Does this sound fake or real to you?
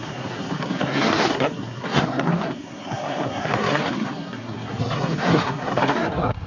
fake